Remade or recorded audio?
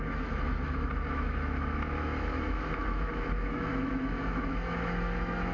remade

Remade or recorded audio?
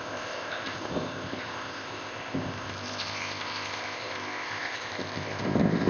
remade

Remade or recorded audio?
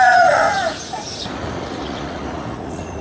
remade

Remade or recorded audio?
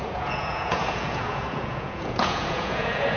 remade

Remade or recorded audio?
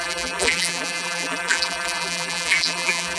remade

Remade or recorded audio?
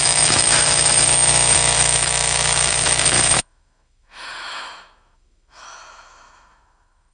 remade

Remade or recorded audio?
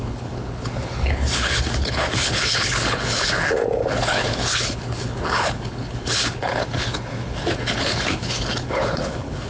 remade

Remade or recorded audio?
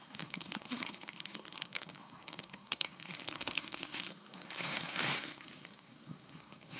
remade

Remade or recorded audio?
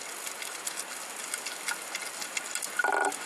recorded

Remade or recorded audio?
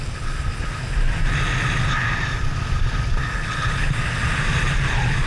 recorded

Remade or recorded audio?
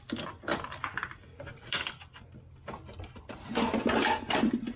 recorded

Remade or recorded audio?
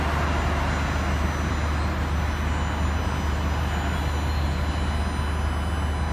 recorded